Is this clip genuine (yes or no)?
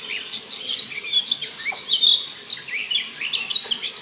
yes